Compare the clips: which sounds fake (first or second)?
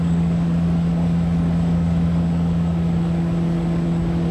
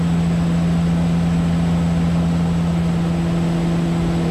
first